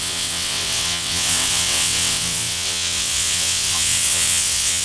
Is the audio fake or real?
fake